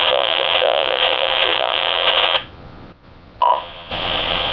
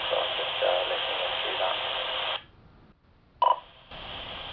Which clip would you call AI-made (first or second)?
first